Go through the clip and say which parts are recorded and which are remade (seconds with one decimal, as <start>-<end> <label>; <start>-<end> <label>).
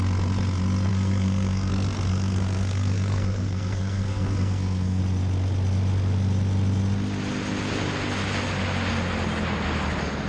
0.0-0.9 recorded; 0.9-1.7 remade; 1.7-2.1 recorded; 2.1-5.0 remade; 5.0-10.3 recorded